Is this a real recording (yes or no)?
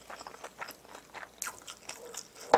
yes